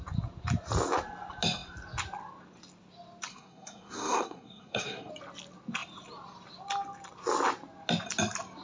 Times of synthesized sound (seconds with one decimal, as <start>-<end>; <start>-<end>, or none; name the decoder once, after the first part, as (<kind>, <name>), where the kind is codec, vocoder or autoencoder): 3.3-5.1 (codec, SNAC)